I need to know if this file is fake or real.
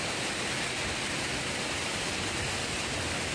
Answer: real